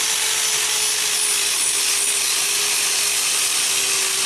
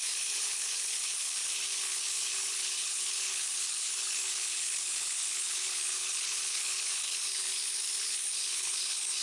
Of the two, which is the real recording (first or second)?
first